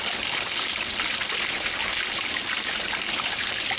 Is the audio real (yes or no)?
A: yes